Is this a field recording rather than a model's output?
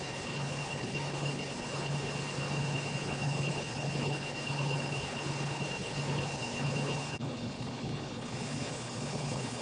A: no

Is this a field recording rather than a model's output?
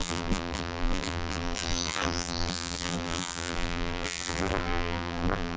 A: no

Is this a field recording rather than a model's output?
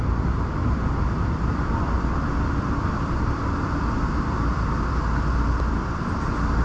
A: no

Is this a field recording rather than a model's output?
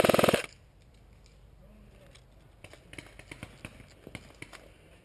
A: yes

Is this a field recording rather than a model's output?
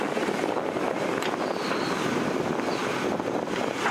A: yes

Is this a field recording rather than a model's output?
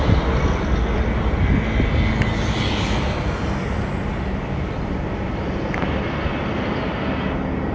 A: yes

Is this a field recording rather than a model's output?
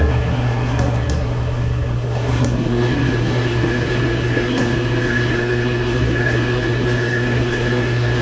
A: no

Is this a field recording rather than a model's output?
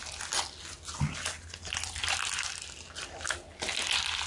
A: yes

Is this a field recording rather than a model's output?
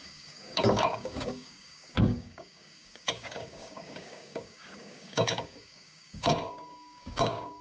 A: no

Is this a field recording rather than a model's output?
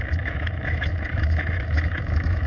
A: no